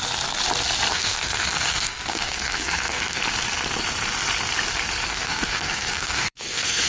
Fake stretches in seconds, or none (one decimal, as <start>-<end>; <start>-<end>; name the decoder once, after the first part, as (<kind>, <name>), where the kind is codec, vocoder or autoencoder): 0.9-3.2 (codec, SNAC); 5.1-6.9